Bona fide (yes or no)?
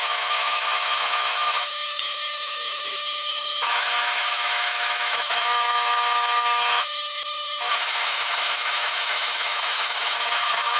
no